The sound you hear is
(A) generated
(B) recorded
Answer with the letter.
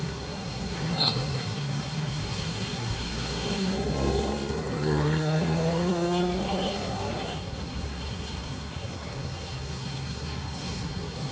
A